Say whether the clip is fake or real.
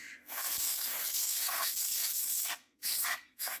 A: fake